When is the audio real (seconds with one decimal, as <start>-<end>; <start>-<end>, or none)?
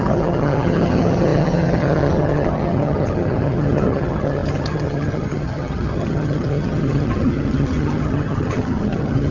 none